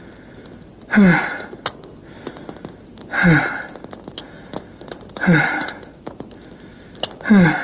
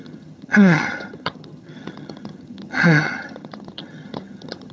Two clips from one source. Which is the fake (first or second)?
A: second